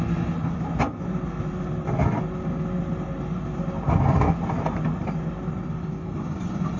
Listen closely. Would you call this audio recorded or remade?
recorded